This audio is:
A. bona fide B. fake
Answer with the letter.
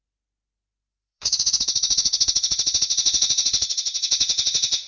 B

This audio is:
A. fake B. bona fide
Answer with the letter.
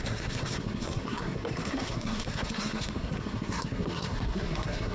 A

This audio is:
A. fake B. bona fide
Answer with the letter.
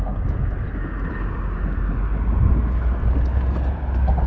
B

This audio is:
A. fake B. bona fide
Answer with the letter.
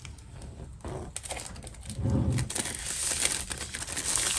B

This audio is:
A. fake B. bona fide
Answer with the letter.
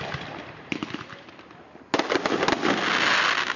B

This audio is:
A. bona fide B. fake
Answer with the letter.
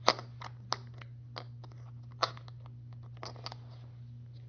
A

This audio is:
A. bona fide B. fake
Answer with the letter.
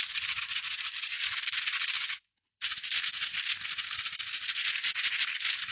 A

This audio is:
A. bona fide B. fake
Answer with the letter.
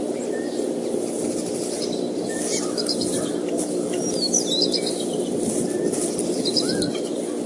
A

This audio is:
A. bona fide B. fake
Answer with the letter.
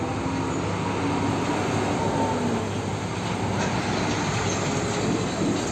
A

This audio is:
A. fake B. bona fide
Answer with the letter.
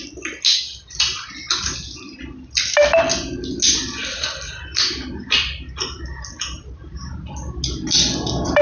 B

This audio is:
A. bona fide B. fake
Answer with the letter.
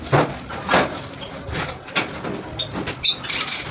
A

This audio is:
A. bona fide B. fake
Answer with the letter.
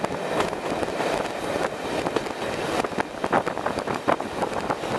A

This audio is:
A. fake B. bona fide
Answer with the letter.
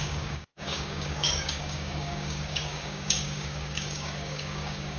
A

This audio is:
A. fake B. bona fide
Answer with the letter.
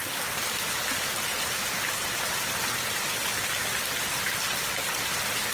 B